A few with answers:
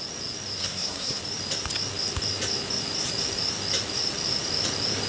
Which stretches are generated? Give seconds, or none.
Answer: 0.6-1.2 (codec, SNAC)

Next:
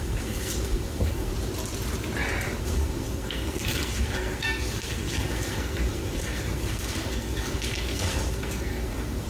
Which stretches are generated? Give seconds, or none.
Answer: 0.0-1.3 (codec, SNAC); 2.6-9.3

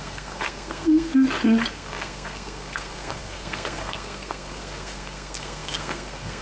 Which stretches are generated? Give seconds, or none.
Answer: 0.0-1.1 (codec, SNAC); 1.7-6.4